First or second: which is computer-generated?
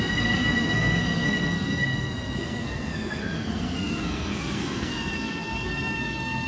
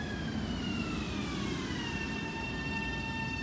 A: first